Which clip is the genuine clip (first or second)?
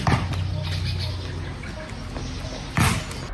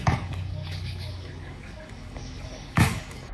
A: first